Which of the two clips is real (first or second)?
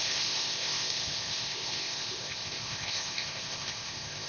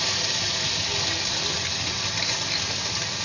second